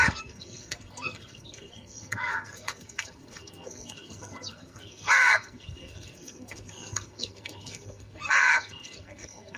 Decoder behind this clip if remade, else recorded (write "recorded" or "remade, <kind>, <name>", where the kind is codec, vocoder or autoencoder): remade, codec, SNAC